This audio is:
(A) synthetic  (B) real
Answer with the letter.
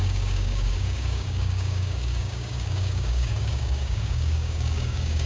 A